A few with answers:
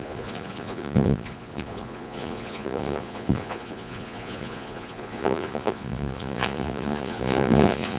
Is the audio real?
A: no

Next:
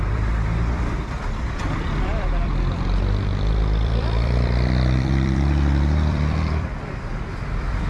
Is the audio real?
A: no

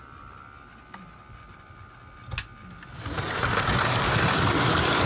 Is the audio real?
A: yes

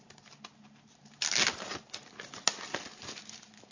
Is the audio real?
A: yes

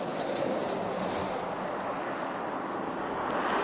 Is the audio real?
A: yes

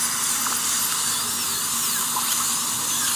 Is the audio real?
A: yes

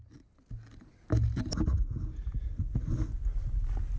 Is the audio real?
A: yes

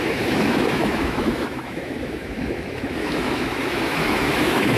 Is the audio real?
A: no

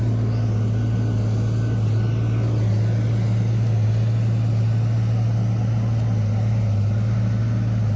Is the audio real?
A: yes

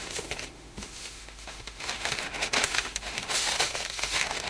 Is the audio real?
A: no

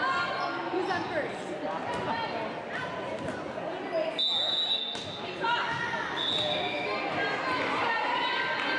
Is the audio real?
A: yes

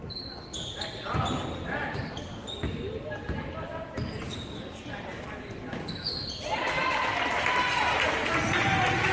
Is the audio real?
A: yes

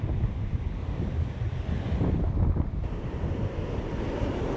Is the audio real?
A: yes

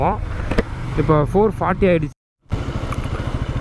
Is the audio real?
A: no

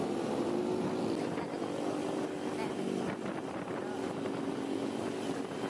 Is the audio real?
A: yes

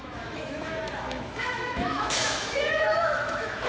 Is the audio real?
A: no